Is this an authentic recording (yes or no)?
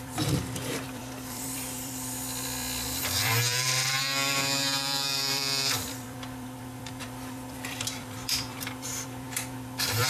no